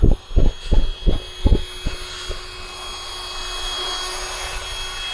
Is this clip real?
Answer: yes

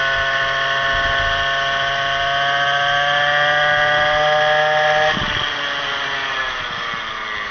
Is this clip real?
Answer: yes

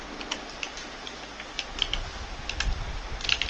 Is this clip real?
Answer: yes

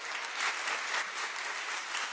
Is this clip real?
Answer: yes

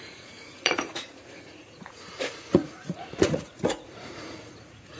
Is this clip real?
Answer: no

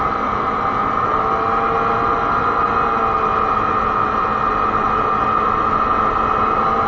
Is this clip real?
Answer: yes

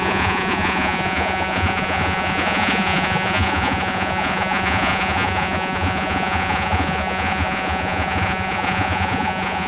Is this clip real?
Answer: no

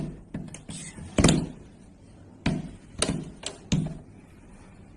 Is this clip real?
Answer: yes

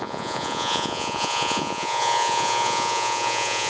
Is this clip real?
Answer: no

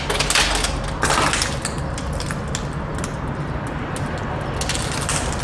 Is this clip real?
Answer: yes